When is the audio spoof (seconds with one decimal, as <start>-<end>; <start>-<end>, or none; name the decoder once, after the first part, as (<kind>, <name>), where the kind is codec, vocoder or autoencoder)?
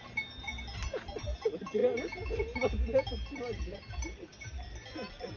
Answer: none